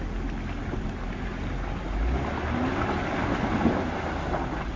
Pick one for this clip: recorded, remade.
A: recorded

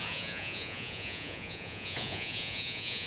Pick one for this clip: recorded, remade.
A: remade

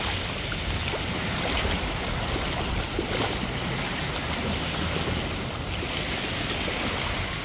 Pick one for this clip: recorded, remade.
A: recorded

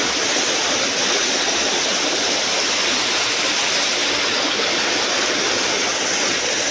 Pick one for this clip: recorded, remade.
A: recorded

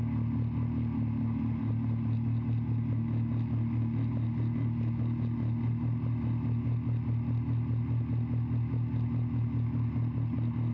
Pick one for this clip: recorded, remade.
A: recorded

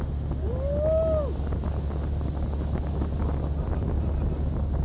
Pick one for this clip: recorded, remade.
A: recorded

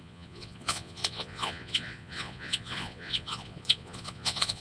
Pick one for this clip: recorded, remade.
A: remade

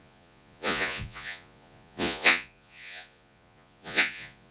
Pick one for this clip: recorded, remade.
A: remade